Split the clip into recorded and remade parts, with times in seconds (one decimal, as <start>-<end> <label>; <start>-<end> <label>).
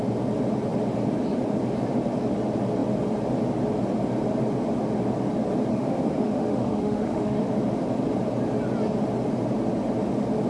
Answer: 0.0-5.7 recorded; 5.7-7.5 remade; 7.5-10.5 recorded